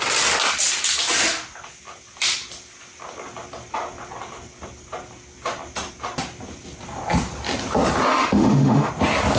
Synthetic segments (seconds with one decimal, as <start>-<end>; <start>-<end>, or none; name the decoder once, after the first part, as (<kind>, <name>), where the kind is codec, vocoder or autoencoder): 8.1-8.9 (autoencoder, DAC-VAE)